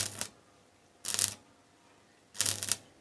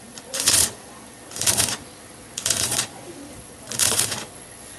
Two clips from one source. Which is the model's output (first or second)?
second